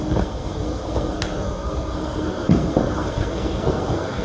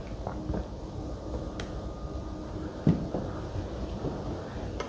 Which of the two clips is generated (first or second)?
first